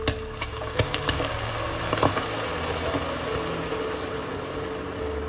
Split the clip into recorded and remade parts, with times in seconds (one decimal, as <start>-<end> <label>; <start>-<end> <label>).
0.0-0.5 recorded; 0.5-1.5 remade; 1.5-5.3 recorded